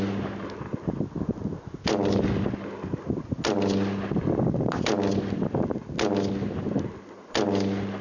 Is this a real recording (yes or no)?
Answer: yes